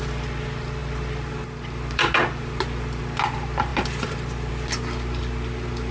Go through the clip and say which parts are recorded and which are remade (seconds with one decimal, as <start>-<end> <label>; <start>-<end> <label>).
0.0-5.9 recorded